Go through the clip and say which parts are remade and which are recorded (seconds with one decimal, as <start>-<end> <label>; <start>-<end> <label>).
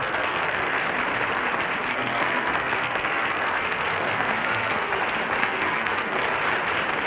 0.0-0.8 remade; 0.8-1.9 recorded; 1.9-4.9 remade; 4.9-5.4 recorded; 5.4-6.2 remade; 6.2-7.1 recorded